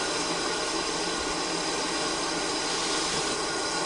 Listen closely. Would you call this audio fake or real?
fake